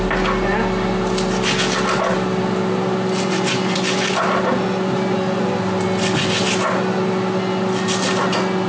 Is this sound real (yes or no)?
yes